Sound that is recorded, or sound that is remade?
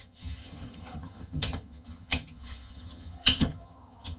remade